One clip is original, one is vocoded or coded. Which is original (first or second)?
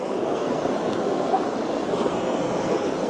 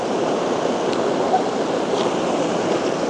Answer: second